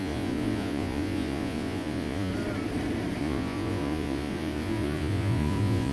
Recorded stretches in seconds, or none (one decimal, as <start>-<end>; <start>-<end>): 2.3-3.2